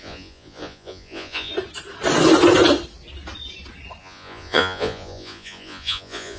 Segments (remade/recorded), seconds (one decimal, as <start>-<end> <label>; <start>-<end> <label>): 0.0-1.5 remade; 1.5-4.0 recorded; 4.0-6.4 remade